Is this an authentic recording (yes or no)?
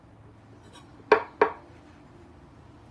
yes